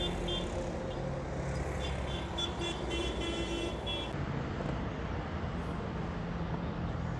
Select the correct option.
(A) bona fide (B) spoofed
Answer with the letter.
A